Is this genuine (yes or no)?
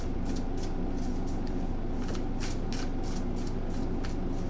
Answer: yes